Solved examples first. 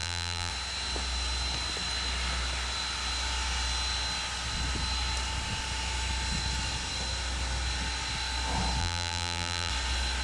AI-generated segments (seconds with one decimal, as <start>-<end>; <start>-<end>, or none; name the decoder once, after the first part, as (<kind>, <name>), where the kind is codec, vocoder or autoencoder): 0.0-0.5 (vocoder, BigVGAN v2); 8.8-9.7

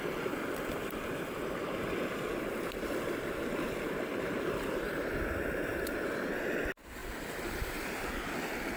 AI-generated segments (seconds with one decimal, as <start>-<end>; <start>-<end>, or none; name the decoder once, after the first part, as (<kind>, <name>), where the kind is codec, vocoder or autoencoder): 4.1-6.4 (vocoder, BigVGAN v2); 7.0-8.1

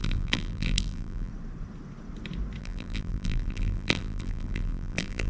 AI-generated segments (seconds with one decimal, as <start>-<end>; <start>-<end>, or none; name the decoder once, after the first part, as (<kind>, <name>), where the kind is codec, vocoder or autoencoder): 0.0-1.3 (vocoder, BigVGAN v2); 2.6-5.3

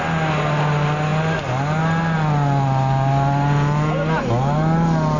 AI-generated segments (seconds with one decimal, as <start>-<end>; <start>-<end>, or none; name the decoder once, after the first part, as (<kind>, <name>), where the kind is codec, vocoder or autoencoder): none

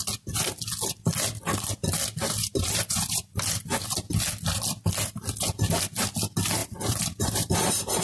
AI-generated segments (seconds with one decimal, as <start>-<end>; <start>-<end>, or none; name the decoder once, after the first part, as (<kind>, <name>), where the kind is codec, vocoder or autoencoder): 2.5-3.6 (vocoder, BigVGAN v2); 6.6-7.5